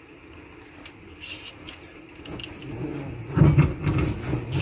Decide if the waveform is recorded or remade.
recorded